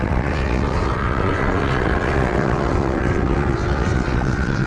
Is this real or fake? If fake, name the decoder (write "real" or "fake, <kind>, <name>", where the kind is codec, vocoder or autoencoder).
fake, vocoder, WaveNeXt